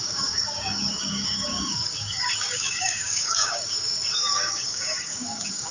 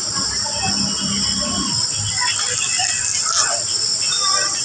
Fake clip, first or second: first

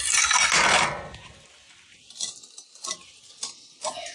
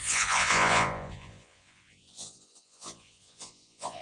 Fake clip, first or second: second